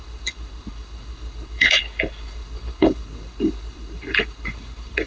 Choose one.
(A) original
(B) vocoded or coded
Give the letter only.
B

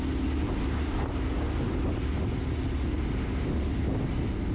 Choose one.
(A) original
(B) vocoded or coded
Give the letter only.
A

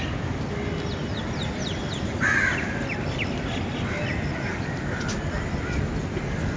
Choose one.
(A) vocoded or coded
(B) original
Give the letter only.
B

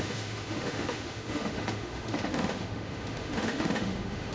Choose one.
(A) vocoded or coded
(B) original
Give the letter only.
A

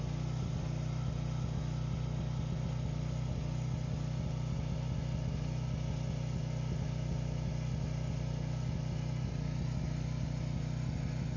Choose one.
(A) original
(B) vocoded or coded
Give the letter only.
A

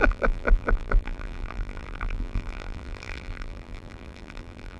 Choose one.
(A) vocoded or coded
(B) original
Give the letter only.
A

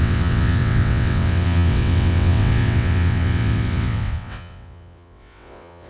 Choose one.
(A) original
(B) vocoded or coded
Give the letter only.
B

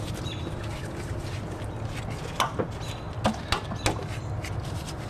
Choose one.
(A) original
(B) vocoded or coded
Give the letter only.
A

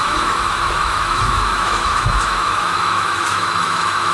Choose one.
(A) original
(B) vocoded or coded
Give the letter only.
B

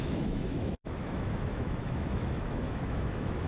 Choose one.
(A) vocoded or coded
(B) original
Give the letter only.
A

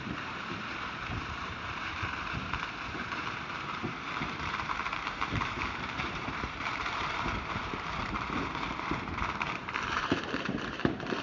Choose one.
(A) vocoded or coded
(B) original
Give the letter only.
A